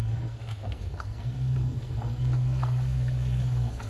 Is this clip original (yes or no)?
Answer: no